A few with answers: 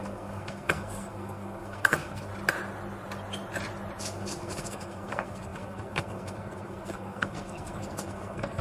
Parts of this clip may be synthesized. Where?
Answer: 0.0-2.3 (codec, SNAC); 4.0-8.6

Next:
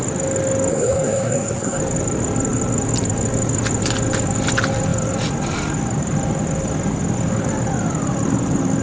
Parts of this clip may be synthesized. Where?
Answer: 0.7-1.8 (codec, SNAC)

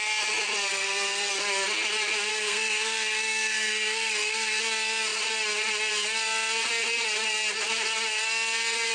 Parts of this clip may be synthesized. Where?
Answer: 0.7-1.3 (codec, SNAC); 2.3-4.6

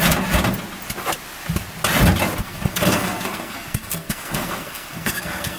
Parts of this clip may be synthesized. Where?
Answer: 2.4-5.6 (codec, SNAC)